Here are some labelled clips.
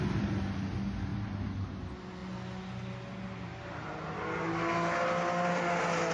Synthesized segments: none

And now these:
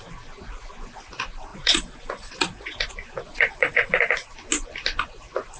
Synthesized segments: 1.5-2.9; 3.3-4.0